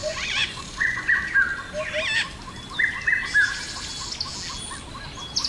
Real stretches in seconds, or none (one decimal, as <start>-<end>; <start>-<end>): 1.1-5.5